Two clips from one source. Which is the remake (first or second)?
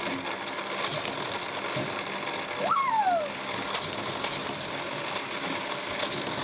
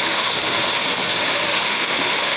second